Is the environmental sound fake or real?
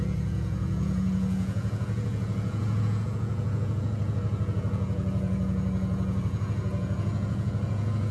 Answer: fake